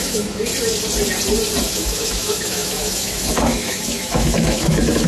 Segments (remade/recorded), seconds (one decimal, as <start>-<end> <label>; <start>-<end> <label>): 0.0-0.5 remade; 0.5-1.6 recorded; 1.6-5.1 remade